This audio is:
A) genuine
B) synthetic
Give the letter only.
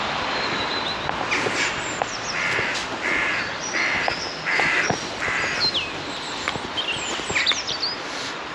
A